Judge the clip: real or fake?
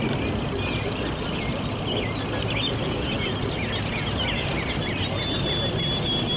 real